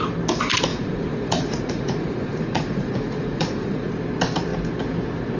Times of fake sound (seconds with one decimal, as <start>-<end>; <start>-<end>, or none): 0.7-3.9